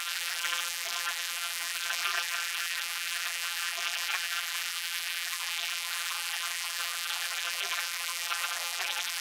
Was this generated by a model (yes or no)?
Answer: yes